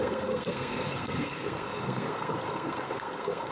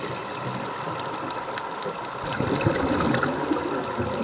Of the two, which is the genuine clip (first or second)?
second